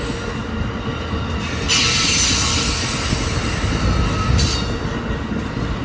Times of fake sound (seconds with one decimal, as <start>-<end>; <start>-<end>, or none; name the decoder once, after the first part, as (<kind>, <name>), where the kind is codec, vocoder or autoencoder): none